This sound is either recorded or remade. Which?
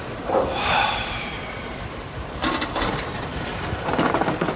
remade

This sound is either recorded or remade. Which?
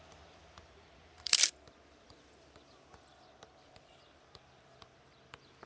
remade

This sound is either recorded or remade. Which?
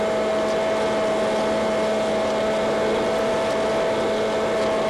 recorded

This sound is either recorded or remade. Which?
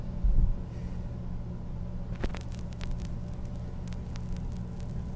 recorded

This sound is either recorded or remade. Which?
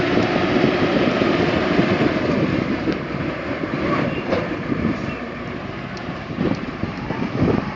remade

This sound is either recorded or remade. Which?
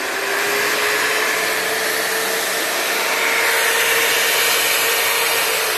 recorded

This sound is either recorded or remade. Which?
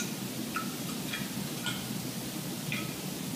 recorded